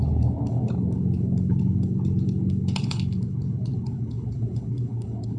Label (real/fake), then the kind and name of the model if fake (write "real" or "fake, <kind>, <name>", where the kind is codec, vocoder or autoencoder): fake, codec, HILCodec